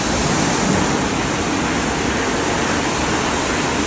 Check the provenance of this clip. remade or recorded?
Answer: recorded